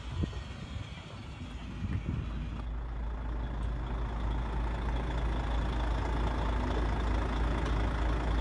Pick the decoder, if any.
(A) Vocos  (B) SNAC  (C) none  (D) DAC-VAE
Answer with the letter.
C